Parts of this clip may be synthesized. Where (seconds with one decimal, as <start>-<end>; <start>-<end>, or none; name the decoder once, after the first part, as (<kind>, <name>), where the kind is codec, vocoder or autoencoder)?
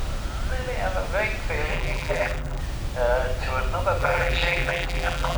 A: 1.7-2.6 (vocoder, BigVGAN v2); 4.0-5.4